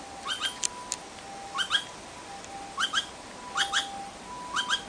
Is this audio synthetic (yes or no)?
no